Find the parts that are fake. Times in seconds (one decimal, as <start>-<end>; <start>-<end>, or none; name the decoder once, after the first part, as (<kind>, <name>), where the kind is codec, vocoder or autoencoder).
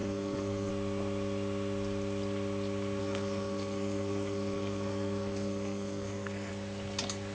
0.0-0.7 (codec, SNAC); 3.0-6.5